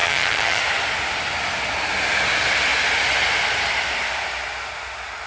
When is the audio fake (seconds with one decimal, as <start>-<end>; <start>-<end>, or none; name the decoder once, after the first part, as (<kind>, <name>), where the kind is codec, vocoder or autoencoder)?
0.0-0.6 (vocoder, HiFi-GAN)